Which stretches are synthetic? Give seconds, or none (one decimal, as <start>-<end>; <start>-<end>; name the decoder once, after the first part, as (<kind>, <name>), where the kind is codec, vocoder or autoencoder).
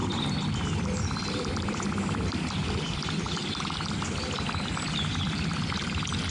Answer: 1.0-3.4 (vocoder, BigVGAN v2); 5.1-6.3